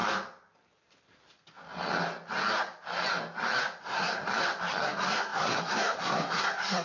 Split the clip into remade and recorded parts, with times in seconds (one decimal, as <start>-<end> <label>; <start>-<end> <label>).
0.0-3.8 recorded; 3.8-4.2 remade; 4.2-4.8 recorded; 4.8-6.8 remade